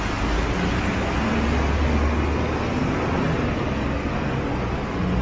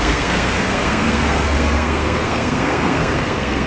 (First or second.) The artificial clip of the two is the second